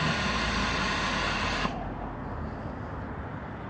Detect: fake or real real